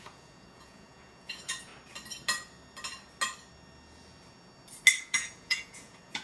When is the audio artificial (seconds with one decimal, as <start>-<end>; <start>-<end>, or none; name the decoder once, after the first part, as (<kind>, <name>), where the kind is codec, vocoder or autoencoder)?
0.0-1.7 (vocoder, Vocos); 5.0-6.2